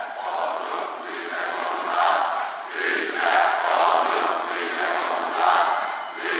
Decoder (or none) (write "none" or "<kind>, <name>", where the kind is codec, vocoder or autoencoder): vocoder, Vocos